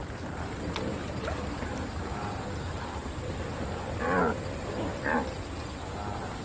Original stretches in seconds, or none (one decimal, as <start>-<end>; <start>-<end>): 3.8-6.4